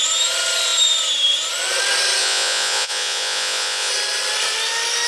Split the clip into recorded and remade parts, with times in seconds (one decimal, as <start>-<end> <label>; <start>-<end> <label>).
0.0-2.2 recorded; 2.2-3.9 remade; 3.9-5.1 recorded